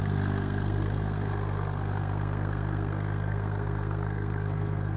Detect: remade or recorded remade